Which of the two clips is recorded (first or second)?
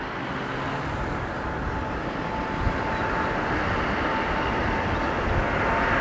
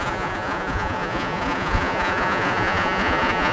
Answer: first